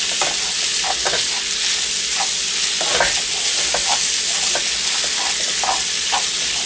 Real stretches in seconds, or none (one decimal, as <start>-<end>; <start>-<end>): 0.0-6.7